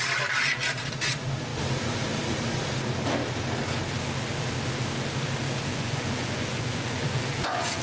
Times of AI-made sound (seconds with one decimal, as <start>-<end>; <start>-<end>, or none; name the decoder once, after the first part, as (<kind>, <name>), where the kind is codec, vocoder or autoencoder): 5.7-7.8 (vocoder, Vocos)